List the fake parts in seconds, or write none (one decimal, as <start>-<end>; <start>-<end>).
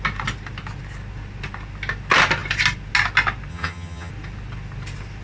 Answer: 3.5-4.1